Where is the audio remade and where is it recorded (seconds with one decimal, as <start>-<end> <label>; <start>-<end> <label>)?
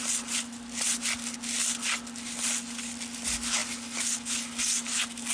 0.0-5.3 recorded